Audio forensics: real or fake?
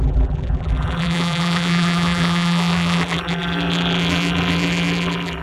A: fake